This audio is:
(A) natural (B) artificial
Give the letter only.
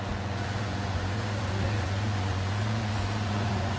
B